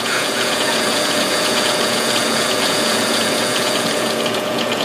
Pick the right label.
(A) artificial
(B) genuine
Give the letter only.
A